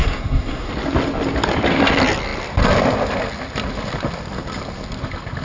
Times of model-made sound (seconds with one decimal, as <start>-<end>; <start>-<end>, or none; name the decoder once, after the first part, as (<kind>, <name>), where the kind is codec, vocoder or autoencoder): 0.0-0.7 (codec, SNAC)